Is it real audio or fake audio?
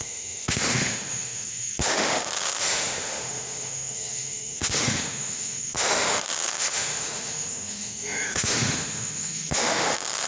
fake